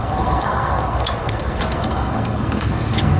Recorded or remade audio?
remade